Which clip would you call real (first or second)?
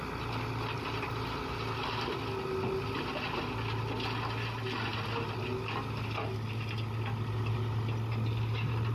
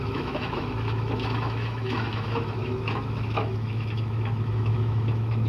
first